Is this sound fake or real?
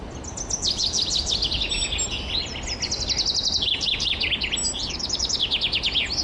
real